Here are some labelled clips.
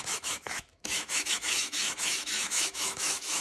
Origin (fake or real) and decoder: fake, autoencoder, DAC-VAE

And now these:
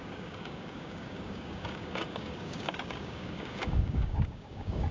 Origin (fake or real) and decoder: fake, codec, DAC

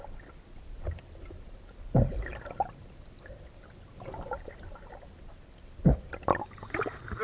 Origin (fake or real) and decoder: real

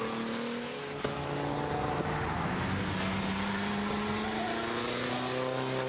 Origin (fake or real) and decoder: real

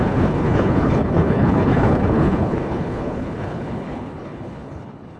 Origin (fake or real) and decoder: fake, codec, HILCodec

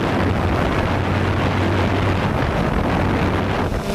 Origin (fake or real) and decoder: real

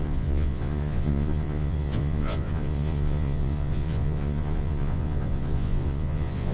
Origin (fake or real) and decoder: fake, vocoder, Vocos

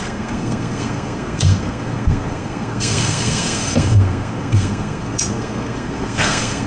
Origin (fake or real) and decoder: fake, codec, SNAC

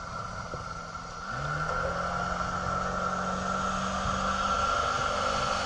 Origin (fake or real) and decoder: real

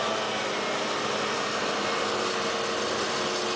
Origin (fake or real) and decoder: real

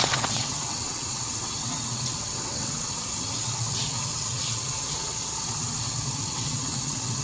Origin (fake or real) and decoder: fake, vocoder, WaveNeXt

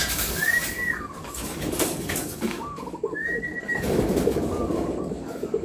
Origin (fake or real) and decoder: fake, codec, DAC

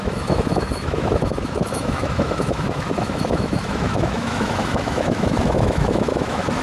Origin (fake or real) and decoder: fake, autoencoder, DAC-VAE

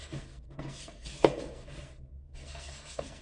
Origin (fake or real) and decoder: fake, codec, SNAC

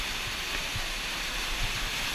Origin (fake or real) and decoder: real